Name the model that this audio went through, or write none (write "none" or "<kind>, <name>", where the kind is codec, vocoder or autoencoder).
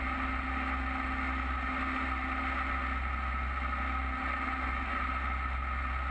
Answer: none